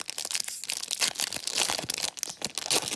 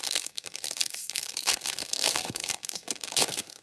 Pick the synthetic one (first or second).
second